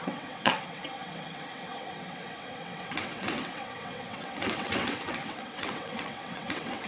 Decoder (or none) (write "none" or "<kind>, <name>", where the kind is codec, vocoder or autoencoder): vocoder, WaveNeXt